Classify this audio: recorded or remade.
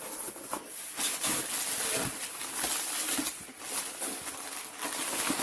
recorded